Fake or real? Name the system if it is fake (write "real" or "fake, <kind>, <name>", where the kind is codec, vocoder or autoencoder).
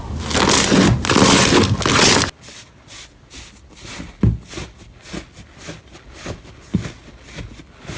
real